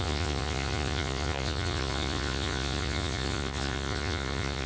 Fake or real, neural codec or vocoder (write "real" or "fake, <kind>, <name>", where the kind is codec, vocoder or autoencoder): fake, vocoder, Vocos